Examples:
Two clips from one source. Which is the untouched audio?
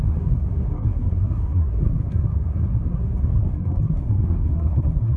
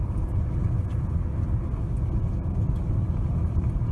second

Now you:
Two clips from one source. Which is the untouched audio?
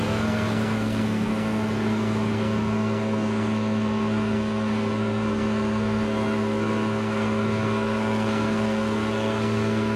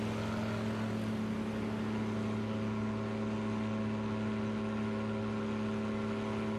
second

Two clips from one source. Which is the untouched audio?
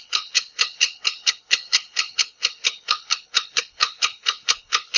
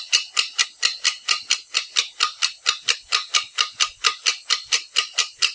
second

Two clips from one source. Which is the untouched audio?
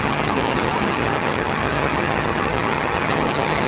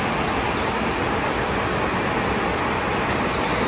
second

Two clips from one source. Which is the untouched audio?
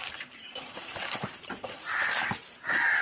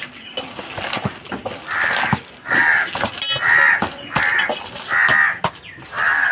second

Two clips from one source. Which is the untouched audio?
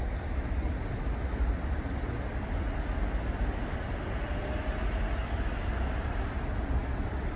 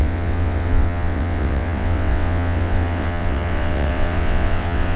first